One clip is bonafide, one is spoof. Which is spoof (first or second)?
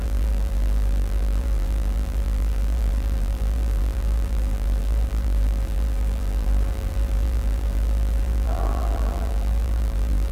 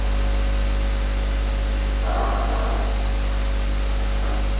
first